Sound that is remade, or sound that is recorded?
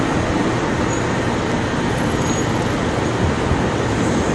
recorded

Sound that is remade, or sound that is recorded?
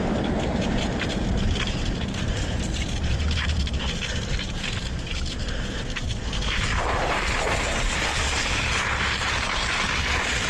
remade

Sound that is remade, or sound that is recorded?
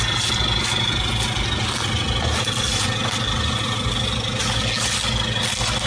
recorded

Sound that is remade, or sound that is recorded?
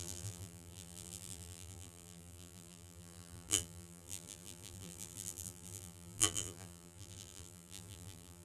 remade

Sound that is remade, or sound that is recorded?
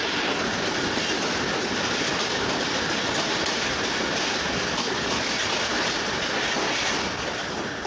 recorded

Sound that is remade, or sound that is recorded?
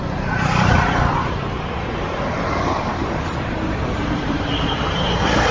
remade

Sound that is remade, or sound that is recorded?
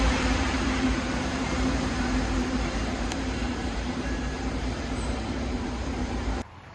remade